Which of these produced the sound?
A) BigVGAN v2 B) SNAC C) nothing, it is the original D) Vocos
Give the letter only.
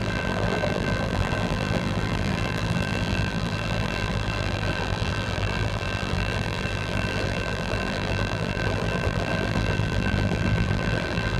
A